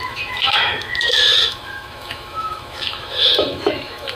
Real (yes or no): no